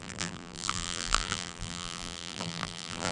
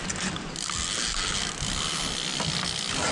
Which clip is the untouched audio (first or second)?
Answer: second